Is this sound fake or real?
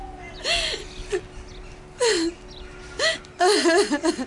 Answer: real